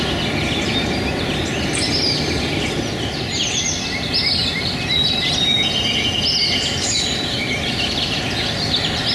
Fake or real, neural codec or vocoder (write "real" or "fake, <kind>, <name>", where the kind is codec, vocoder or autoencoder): real